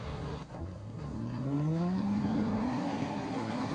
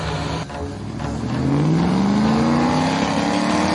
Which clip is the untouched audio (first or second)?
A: second